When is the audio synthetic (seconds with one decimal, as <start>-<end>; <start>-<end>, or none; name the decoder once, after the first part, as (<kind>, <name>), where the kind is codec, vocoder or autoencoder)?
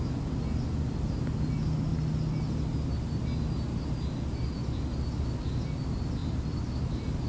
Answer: none